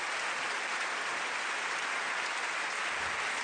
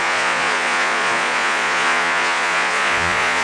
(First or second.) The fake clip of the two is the second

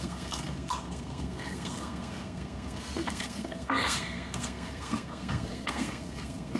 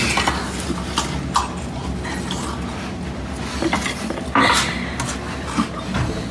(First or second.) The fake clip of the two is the first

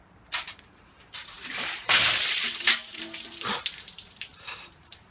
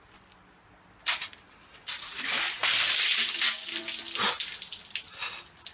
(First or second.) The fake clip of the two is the first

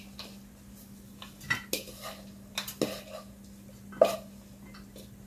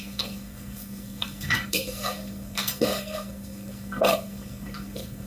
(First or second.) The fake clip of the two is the second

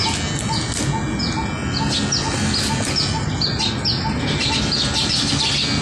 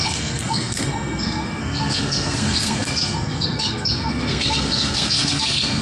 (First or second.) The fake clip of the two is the second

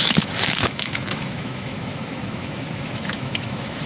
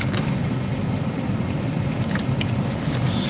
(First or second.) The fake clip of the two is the first